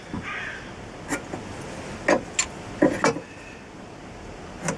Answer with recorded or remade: recorded